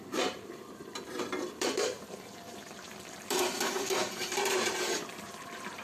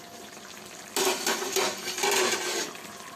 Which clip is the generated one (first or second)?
first